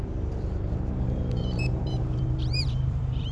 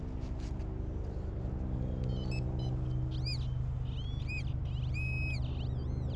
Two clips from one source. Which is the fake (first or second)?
first